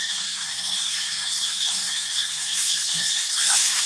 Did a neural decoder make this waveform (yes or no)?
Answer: yes